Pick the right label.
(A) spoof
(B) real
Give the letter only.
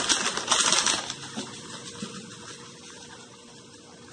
B